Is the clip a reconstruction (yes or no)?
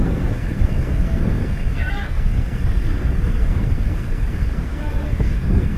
yes